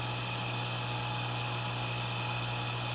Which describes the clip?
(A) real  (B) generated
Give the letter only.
A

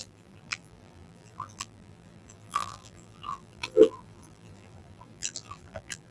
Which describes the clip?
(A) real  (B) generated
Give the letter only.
B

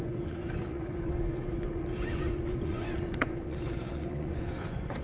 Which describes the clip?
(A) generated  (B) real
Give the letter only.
A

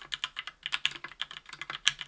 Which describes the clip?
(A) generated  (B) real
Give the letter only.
B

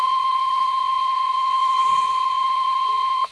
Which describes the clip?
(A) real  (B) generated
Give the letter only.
B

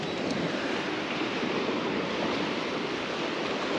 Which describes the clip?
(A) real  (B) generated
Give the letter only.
A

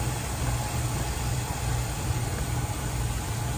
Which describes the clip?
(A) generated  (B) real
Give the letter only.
A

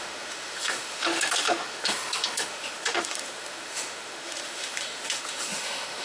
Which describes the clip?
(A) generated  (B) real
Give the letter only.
A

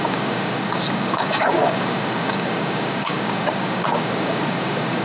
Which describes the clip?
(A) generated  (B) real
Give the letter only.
A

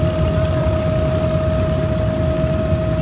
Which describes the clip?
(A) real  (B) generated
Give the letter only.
A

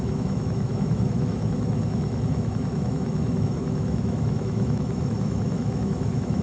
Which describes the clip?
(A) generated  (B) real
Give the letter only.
A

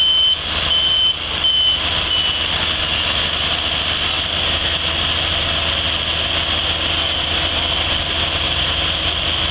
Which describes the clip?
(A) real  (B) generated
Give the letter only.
A